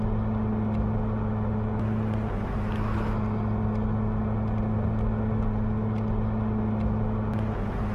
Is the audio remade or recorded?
recorded